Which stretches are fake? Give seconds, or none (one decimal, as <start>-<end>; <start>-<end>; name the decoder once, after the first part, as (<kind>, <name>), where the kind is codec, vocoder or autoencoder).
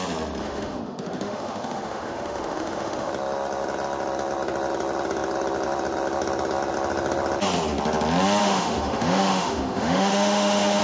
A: 0.4-3.1 (autoencoder, DAC-VAE); 8.4-10.8